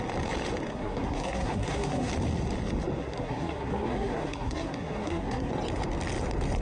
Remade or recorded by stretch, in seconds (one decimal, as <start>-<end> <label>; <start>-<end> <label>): 0.0-0.7 recorded; 0.7-2.1 remade; 2.1-3.0 recorded; 3.0-5.5 remade; 5.5-6.6 recorded